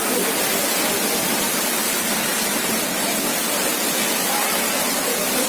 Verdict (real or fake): real